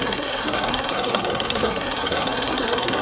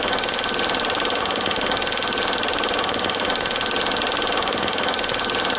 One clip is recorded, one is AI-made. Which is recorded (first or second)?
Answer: second